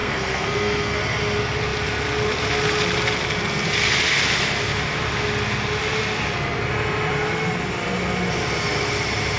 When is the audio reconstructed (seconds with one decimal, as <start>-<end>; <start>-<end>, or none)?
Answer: 0.0-1.0